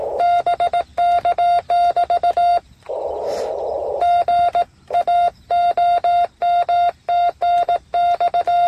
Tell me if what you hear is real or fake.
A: real